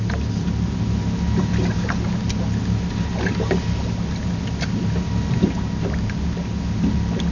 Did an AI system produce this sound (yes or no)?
no